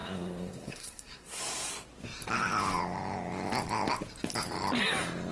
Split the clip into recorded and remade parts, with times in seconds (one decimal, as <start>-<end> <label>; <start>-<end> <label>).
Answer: 0.0-1.4 remade; 1.4-5.3 recorded